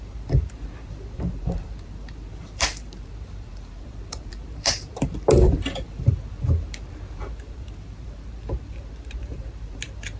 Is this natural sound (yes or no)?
no